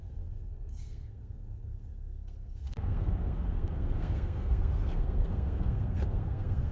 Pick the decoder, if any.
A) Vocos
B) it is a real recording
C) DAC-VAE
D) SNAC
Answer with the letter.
D